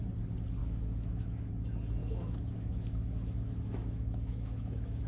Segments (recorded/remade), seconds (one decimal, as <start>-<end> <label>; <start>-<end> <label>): 0.0-0.6 recorded; 0.6-1.5 remade; 1.5-2.0 recorded; 2.0-5.1 remade